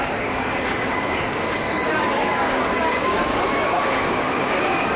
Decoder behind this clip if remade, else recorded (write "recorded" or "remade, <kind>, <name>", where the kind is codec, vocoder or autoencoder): remade, codec, DAC